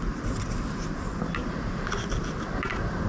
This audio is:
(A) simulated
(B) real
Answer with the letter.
B